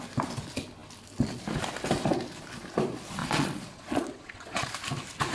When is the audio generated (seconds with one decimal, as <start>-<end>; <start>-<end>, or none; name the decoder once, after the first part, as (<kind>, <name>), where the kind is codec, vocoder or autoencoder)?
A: 3.2-4.7 (vocoder, Vocos)